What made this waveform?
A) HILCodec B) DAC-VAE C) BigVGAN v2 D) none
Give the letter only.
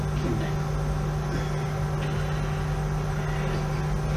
D